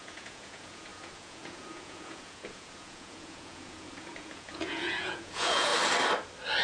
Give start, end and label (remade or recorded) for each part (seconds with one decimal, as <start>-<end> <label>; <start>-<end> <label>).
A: 0.0-5.7 remade; 5.7-6.6 recorded